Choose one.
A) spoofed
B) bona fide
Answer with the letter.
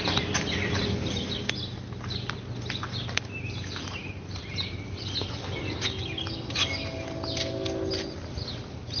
B